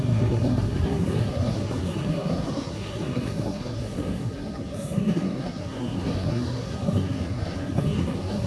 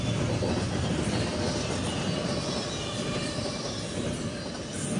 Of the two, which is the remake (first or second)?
first